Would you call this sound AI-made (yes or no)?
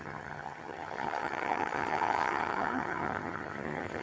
yes